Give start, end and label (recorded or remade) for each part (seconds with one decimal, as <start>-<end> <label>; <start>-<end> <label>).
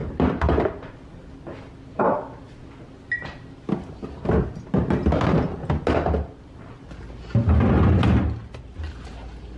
0.0-1.3 remade; 1.3-9.6 recorded